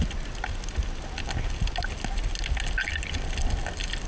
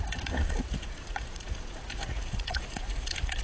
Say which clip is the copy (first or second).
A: second